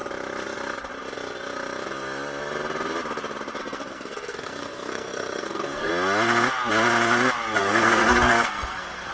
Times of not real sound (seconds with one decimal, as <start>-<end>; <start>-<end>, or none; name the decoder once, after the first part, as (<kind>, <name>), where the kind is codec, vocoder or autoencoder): 3.6-5.9 (codec, SNAC); 7.6-9.1

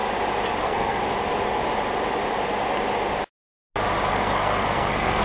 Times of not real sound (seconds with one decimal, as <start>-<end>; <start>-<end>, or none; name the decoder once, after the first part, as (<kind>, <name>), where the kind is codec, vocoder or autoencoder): 0.6-1.0 (codec, SNAC); 4.1-5.2